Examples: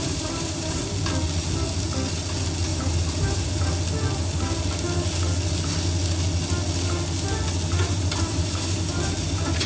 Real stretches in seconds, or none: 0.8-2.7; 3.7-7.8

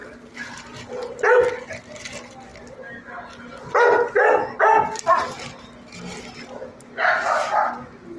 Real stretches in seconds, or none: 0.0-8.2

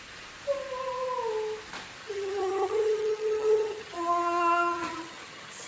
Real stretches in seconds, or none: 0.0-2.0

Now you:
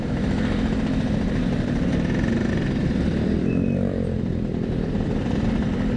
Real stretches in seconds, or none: 1.9-2.5